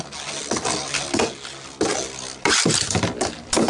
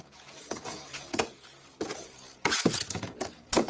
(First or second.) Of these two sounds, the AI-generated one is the second